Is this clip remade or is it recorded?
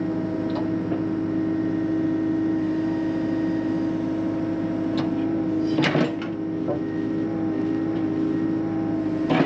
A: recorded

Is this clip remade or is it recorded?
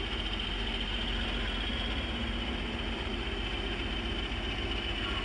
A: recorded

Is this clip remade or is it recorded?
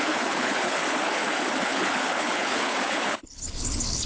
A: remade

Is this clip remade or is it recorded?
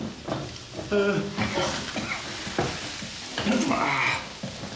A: recorded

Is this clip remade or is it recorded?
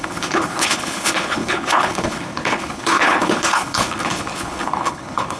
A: remade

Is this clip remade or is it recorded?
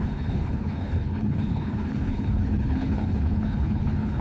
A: remade